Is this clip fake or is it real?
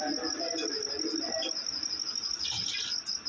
real